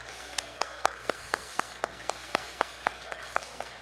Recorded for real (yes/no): no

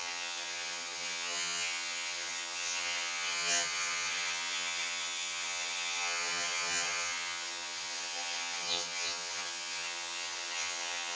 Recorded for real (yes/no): no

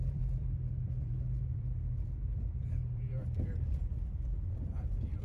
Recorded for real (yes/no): no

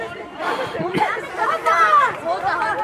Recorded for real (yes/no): yes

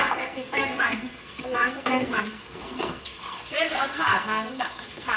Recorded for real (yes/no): no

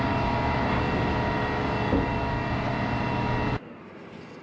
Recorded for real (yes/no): yes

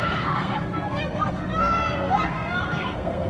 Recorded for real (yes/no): no